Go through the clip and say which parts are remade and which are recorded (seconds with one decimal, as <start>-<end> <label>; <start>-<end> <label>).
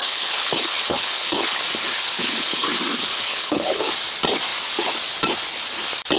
0.0-1.6 remade; 1.6-2.2 recorded; 2.2-2.7 remade; 2.7-3.1 recorded; 3.1-3.9 remade; 3.9-6.2 recorded